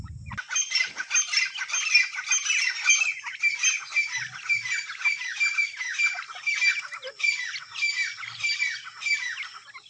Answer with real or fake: real